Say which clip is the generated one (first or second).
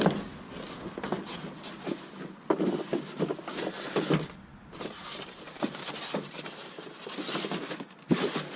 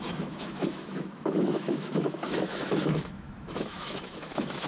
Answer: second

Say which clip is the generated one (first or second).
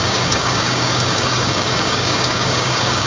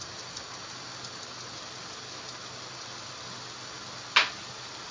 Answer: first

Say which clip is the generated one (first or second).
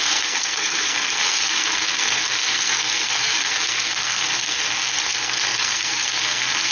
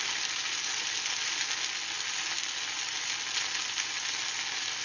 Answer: first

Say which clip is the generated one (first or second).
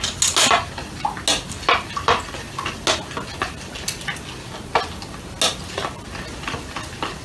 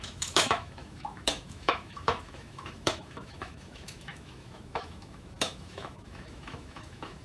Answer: second